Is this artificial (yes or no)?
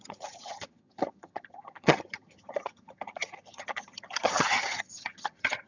yes